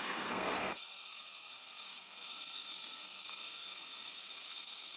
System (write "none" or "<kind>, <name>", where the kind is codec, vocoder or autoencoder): codec, SNAC